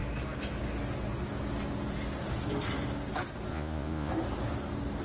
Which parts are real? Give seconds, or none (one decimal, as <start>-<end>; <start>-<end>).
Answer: 0.0-3.5; 4.1-5.0